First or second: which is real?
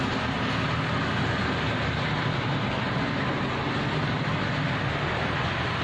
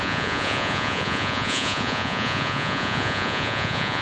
first